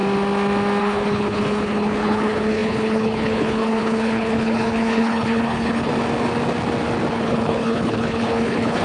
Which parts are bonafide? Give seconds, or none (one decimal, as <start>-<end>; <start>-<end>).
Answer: 0.0-0.8; 5.9-7.1